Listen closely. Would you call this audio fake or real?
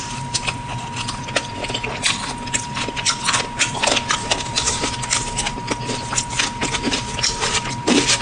fake